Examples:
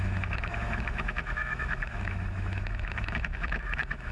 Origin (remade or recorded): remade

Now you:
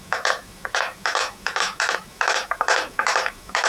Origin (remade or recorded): remade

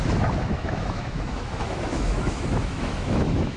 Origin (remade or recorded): remade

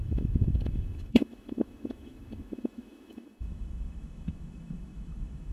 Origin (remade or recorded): remade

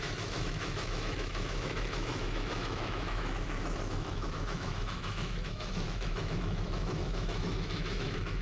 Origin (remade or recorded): remade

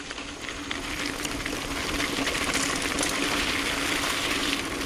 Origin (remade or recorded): recorded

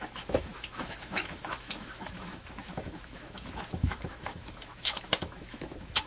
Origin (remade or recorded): remade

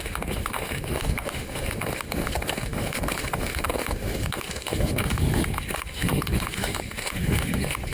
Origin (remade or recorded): remade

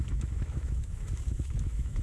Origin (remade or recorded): remade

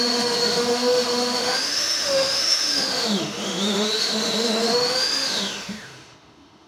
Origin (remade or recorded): remade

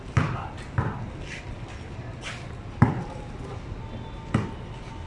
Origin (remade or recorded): recorded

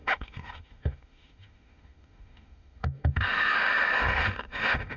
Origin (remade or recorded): remade